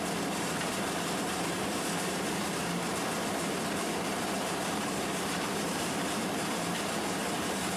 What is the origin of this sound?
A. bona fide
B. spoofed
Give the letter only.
B